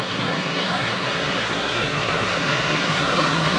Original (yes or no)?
no